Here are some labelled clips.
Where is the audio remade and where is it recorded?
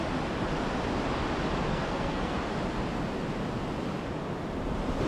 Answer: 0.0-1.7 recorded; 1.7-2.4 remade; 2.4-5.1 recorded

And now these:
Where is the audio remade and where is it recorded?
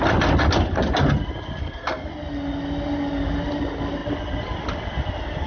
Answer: 0.0-1.6 recorded; 1.6-2.1 remade; 2.1-5.5 recorded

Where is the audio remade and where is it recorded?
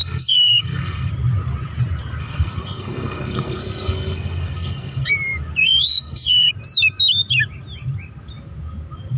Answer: 0.0-1.1 remade; 1.1-2.2 recorded; 2.2-5.1 remade; 5.1-5.6 recorded; 5.6-6.5 remade; 6.5-9.2 recorded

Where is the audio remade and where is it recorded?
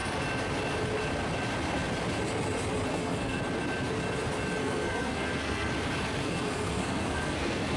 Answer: 0.0-2.9 recorded; 2.9-3.4 remade; 3.4-4.6 recorded; 4.6-5.7 remade; 5.7-6.2 recorded; 6.2-7.8 remade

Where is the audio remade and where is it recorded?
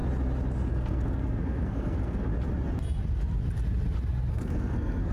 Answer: 0.0-0.7 recorded; 0.7-2.3 remade; 2.3-4.3 recorded; 4.3-5.1 remade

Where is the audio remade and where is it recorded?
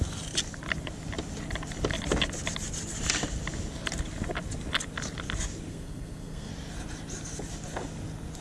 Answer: 0.0-5.7 recorded; 5.7-6.5 remade; 6.5-8.4 recorded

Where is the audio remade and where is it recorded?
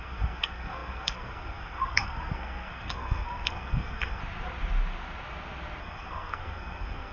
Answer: 0.0-4.2 remade; 4.2-5.8 recorded; 5.8-7.1 remade